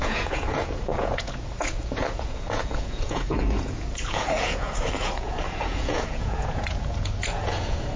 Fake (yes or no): yes